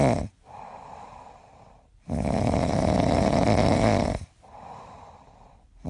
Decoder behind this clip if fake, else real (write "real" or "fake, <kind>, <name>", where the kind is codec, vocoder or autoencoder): fake, vocoder, BigVGAN v2